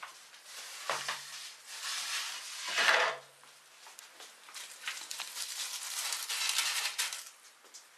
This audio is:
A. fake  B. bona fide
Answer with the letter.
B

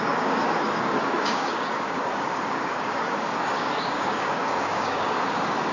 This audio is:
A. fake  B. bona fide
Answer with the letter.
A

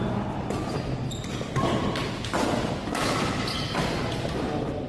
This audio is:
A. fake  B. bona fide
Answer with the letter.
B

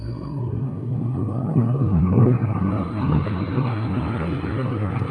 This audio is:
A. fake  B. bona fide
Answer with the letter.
A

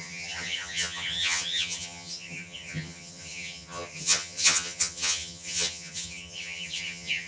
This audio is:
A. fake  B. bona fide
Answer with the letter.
A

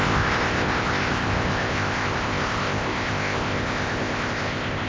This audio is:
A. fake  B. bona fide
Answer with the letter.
A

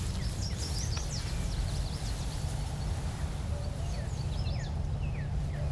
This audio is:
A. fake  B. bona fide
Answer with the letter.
B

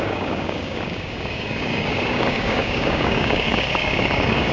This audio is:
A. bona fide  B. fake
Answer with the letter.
B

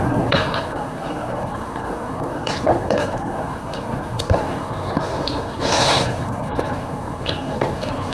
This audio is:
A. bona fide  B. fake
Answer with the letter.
B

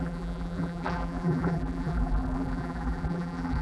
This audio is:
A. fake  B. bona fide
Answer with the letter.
A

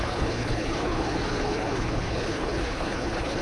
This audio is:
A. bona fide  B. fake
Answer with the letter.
B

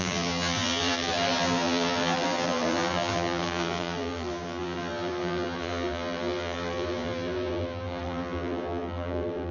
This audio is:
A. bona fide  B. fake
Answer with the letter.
B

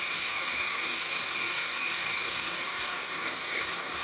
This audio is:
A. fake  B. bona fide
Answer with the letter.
A